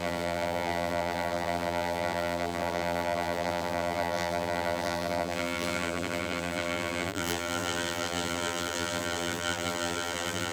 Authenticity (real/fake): fake